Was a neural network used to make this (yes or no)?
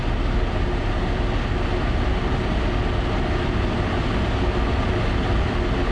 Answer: no